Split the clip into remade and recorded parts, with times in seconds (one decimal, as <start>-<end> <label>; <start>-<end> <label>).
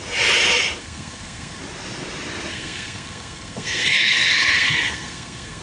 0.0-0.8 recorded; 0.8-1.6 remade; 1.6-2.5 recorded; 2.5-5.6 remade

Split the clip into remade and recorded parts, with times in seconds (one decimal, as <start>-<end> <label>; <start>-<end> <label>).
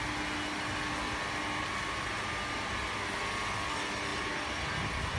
0.0-5.2 recorded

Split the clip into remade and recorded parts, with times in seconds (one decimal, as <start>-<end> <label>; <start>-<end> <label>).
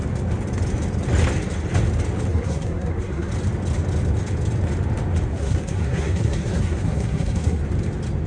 0.0-2.3 recorded; 2.3-3.3 remade; 3.3-5.3 recorded; 5.3-7.6 remade; 7.6-8.3 recorded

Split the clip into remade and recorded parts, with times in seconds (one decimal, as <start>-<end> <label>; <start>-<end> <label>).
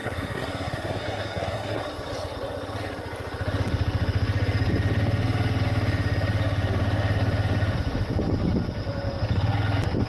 0.0-1.8 remade; 1.8-10.1 recorded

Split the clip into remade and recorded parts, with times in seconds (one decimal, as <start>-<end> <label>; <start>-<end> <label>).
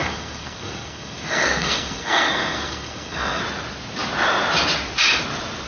0.0-3.4 remade; 3.4-5.7 recorded